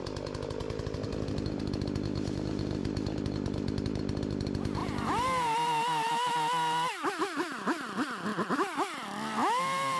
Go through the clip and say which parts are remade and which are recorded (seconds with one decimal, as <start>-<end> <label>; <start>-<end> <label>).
0.0-4.8 recorded; 4.8-6.3 remade; 6.3-10.0 recorded